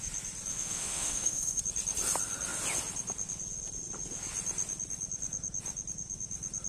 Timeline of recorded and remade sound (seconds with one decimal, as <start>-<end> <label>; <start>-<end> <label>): 0.0-0.5 recorded; 0.5-1.6 remade; 1.6-6.7 recorded